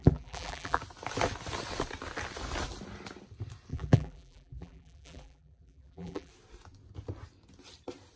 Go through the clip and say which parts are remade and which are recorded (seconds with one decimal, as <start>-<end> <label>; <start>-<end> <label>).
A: 0.0-0.8 remade; 0.8-3.7 recorded; 3.7-6.3 remade; 6.3-8.2 recorded